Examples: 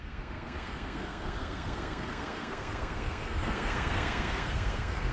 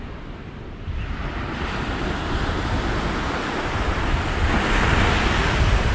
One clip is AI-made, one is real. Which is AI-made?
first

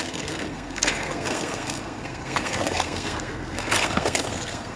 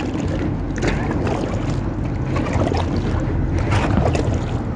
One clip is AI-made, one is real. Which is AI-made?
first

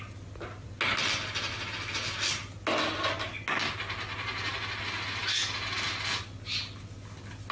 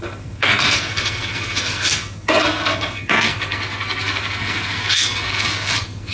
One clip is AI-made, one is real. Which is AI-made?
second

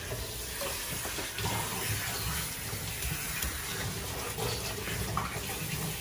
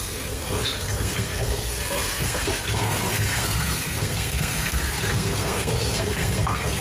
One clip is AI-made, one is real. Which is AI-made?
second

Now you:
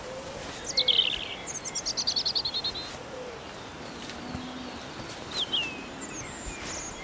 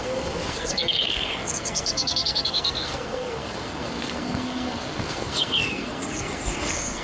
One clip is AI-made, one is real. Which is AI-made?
second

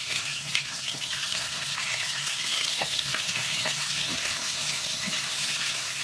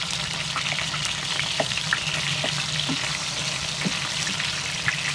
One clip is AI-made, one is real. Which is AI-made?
first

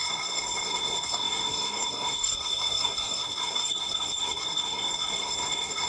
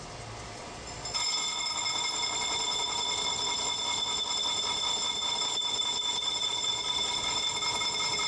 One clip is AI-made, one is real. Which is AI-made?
first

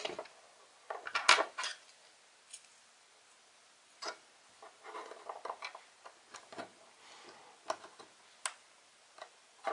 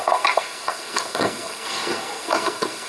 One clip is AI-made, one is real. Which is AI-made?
second